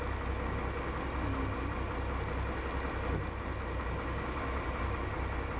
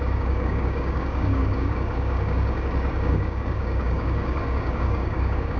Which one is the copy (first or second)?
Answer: second